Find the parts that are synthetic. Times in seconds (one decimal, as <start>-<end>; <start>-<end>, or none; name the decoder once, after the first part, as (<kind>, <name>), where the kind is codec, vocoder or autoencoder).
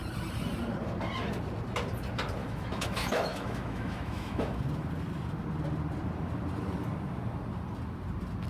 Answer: 2.4-4.6 (autoencoder, DAC-VAE)